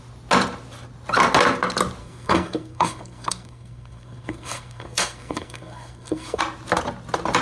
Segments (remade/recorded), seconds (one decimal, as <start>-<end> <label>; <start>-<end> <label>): 0.0-2.0 recorded; 2.0-6.4 remade; 6.4-7.4 recorded